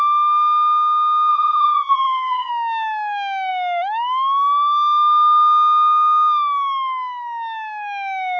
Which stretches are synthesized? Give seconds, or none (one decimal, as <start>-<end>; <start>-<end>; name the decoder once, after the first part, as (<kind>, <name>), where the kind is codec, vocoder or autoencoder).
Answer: 1.3-2.5 (vocoder, BigVGAN v2)

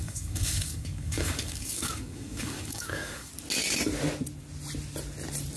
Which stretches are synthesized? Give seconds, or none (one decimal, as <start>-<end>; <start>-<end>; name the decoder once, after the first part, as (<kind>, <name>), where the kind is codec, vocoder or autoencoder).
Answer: 0.0-3.3 (codec, DAC)

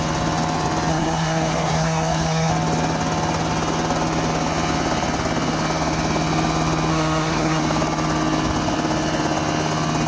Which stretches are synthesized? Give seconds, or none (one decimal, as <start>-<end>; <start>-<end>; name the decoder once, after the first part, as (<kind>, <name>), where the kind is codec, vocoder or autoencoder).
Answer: 0.9-2.5 (codec, SNAC); 6.9-7.6